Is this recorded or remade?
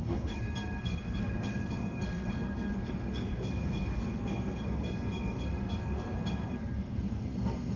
remade